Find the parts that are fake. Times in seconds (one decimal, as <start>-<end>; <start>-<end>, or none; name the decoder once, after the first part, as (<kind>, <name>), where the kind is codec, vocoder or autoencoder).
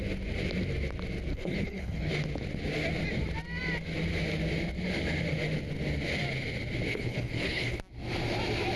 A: 1.3-2.1 (codec, HILCodec); 6.9-7.8